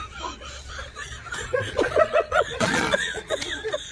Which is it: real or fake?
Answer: fake